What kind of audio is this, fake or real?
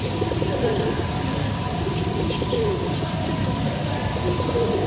real